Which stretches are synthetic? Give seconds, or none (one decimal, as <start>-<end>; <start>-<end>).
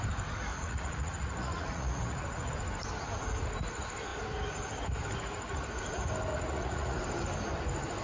0.5-2.5; 6.3-7.0